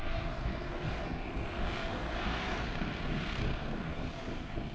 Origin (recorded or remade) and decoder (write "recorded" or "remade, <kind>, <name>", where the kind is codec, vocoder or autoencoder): remade, codec, SNAC